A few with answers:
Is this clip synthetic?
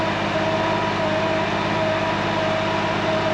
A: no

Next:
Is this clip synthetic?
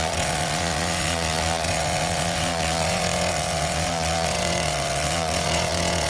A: yes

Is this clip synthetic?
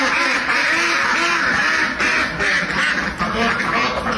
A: no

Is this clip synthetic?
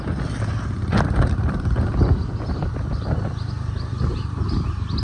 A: no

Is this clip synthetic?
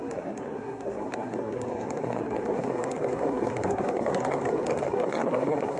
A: yes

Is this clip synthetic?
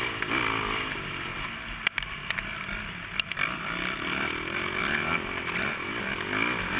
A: no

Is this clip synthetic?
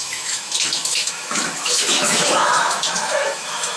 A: yes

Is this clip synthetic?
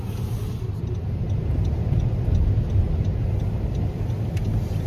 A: no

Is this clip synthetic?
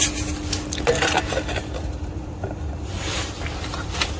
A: no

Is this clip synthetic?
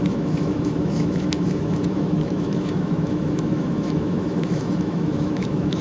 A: yes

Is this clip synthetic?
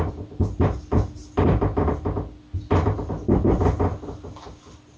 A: no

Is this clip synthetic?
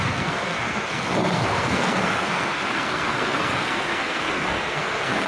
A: yes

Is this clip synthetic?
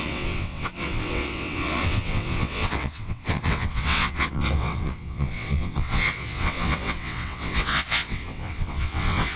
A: yes